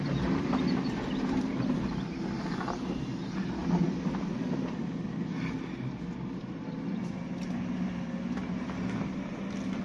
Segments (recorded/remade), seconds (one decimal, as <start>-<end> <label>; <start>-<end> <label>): 0.0-3.6 recorded; 3.6-5.4 remade; 5.4-9.8 recorded